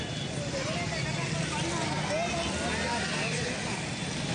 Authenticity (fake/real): real